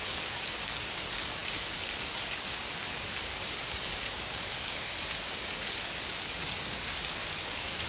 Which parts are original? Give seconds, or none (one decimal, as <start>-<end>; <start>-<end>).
none